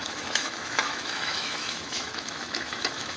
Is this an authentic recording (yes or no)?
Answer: no